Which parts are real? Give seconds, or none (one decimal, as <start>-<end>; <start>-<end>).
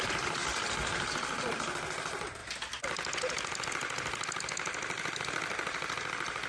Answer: 0.0-6.5